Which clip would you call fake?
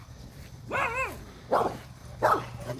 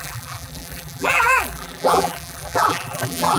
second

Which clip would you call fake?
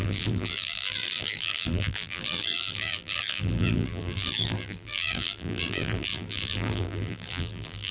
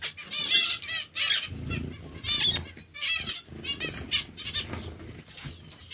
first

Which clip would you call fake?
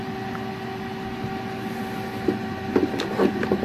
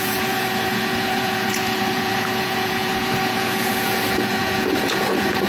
second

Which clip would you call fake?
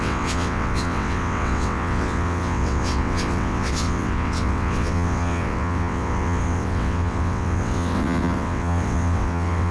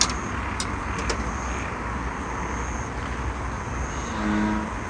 first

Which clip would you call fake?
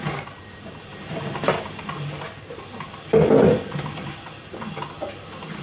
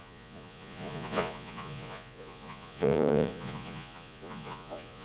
second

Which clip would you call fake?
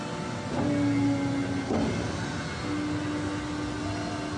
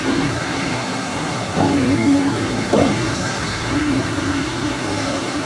second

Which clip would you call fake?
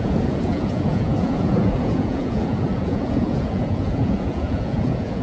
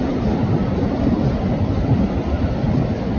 first